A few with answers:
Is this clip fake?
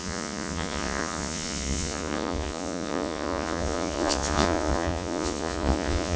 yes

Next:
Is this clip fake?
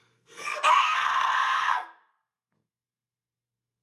yes